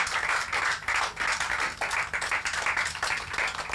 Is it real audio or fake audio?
real